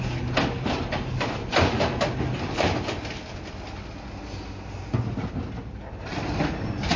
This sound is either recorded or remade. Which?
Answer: recorded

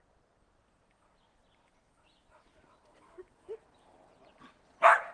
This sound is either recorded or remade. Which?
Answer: recorded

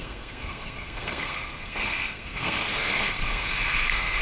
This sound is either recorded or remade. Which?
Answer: remade